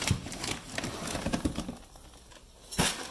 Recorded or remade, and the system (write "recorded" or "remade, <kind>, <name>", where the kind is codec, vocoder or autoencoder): recorded